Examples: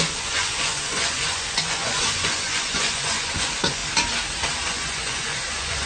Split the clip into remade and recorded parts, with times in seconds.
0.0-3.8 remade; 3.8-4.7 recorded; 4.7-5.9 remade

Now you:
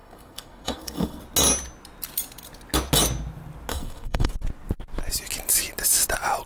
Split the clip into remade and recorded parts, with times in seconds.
0.0-1.2 remade; 1.2-3.7 recorded; 3.7-4.3 remade; 4.3-6.5 recorded

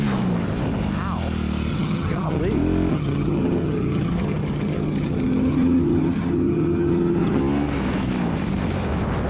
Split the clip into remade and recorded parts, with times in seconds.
0.0-1.7 recorded; 1.7-2.4 remade; 2.4-2.9 recorded; 2.9-7.4 remade; 7.4-9.3 recorded

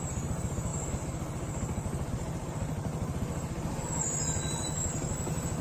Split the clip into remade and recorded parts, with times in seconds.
0.0-5.6 recorded

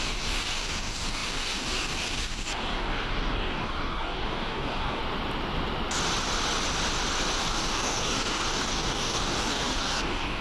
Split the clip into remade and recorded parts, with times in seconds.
0.0-5.0 remade; 5.0-7.4 recorded; 7.4-10.4 remade

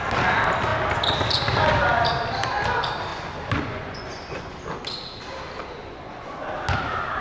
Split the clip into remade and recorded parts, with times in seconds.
0.0-3.1 recorded; 3.1-4.5 remade; 4.5-5.8 recorded; 5.8-6.4 remade; 6.4-7.2 recorded

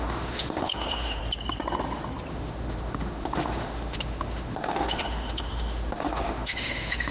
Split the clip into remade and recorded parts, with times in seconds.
0.0-1.2 remade; 1.2-2.3 recorded; 2.3-7.1 remade

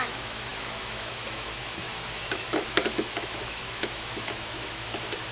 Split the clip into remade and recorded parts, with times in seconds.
0.0-5.3 remade